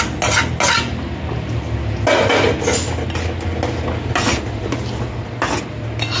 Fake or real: real